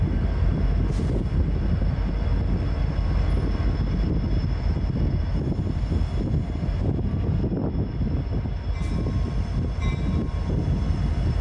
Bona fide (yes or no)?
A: yes